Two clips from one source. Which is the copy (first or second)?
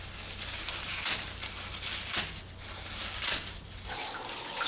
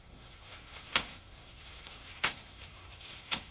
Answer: second